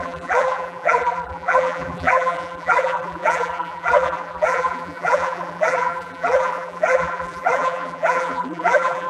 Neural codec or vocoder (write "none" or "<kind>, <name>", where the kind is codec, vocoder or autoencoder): vocoder, BigVGAN v2